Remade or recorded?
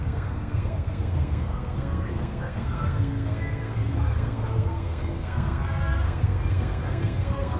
remade